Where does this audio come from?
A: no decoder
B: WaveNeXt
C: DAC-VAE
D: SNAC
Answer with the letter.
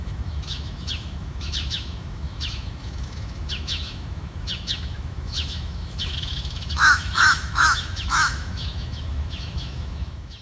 C